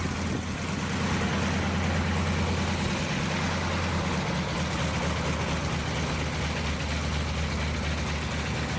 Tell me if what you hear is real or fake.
real